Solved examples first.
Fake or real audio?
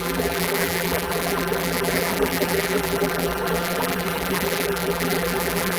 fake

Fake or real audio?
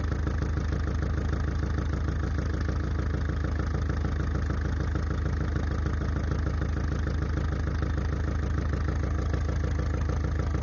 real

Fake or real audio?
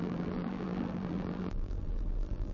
fake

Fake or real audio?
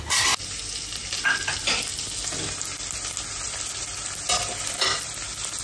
real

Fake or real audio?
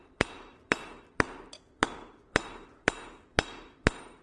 fake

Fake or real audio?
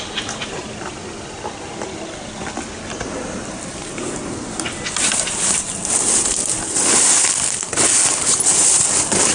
real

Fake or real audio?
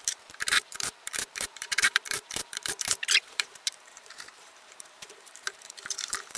fake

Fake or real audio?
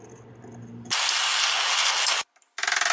real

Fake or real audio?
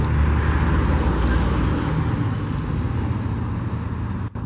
real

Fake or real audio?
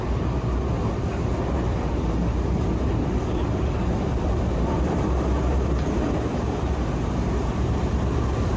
real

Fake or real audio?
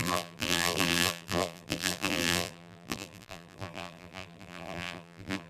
fake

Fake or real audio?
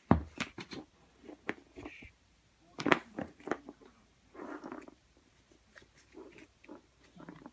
fake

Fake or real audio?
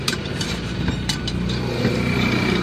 fake